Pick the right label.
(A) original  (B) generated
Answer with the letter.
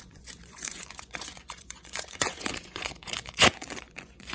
B